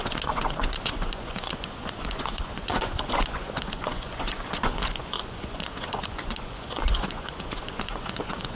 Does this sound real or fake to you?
fake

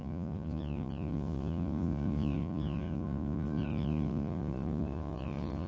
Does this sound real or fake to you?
fake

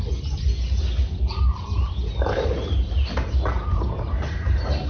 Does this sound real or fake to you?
real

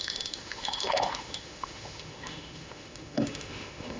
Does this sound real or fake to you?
fake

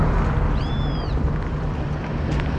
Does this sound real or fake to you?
fake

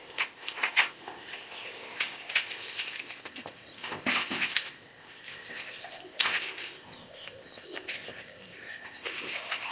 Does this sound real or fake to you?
fake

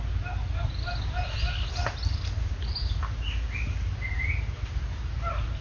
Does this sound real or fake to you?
real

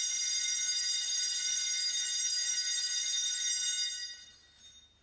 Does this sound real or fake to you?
real